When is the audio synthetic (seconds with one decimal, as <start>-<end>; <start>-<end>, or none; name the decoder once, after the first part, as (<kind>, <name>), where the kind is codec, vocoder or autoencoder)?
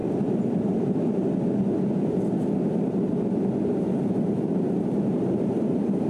3.7-6.1 (vocoder, BigVGAN v2)